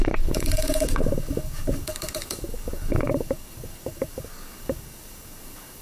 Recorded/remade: remade